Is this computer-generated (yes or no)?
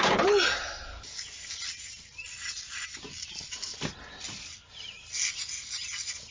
no